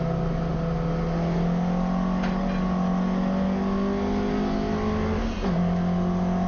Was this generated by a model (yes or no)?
no